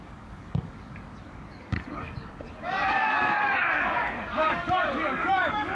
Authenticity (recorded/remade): remade